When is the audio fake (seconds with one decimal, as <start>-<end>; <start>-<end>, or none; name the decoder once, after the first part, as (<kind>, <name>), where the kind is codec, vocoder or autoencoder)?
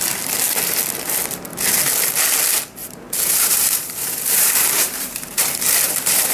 2.8-6.3 (vocoder, BigVGAN v2)